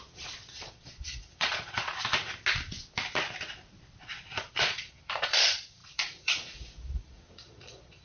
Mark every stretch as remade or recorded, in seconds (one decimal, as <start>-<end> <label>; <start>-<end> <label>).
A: 0.0-1.8 remade; 1.8-4.4 recorded; 4.4-8.0 remade